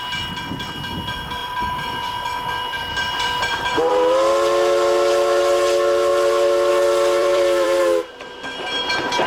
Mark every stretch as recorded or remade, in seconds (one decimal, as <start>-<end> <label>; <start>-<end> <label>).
0.0-1.4 recorded; 1.4-3.9 remade; 3.9-7.2 recorded; 7.2-8.9 remade; 8.9-9.3 recorded